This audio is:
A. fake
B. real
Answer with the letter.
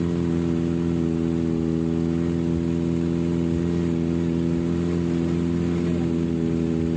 B